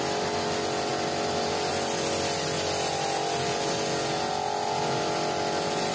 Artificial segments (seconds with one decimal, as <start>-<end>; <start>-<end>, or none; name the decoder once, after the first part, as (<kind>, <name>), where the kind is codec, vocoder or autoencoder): none